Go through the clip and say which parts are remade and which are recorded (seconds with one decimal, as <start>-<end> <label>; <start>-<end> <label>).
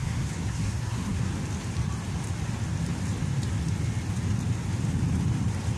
0.0-1.3 remade; 1.3-5.8 recorded